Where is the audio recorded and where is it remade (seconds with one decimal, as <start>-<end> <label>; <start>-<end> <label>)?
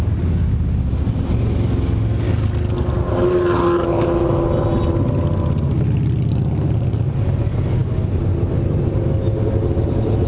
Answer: 0.0-10.3 recorded